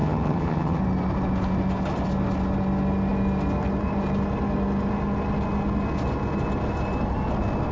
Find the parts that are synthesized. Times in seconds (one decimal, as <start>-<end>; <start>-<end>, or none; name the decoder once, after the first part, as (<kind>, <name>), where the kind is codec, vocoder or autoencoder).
0.0-0.8 (vocoder, HiFi-GAN)